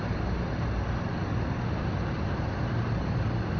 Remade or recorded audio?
recorded